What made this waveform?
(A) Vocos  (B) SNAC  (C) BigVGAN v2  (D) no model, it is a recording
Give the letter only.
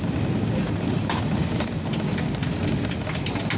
D